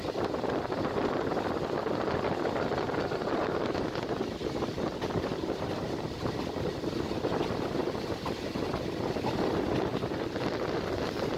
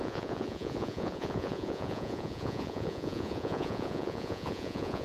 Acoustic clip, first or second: first